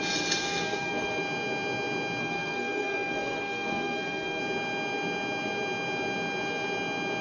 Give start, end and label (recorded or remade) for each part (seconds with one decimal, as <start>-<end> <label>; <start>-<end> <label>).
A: 0.0-0.4 recorded; 0.4-1.2 remade; 1.2-2.2 recorded; 2.2-4.4 remade; 4.4-7.2 recorded

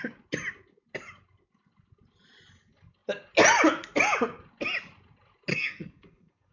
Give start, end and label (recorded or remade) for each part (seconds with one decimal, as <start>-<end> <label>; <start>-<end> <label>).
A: 0.0-5.5 recorded; 5.5-6.5 remade